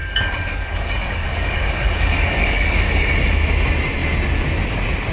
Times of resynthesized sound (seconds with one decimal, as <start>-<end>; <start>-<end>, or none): 0.0-3.1